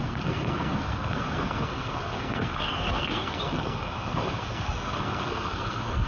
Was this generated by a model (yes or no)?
yes